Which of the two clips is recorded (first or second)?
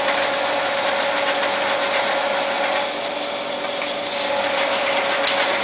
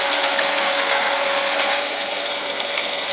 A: first